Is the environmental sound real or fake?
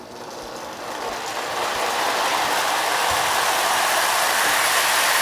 real